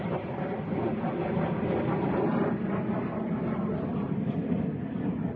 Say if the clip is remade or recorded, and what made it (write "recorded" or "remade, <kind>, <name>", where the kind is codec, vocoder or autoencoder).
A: recorded